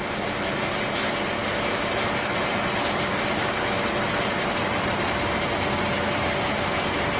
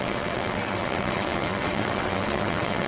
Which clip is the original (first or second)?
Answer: first